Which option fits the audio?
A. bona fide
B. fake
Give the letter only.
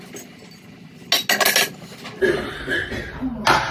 A